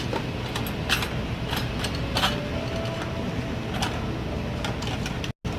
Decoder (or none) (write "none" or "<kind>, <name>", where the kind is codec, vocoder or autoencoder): none